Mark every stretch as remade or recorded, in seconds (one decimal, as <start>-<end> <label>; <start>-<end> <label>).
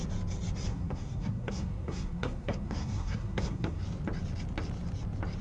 0.0-0.7 recorded; 0.7-3.8 remade; 3.8-5.4 recorded